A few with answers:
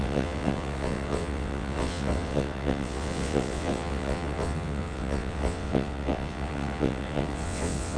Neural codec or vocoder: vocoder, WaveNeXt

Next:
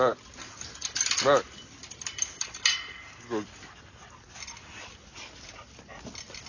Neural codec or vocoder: none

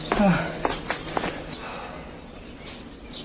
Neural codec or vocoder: none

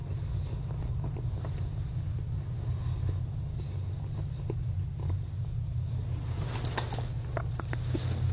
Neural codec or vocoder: none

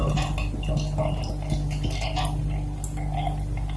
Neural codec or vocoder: none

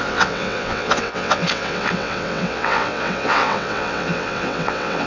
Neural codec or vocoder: vocoder, WaveNeXt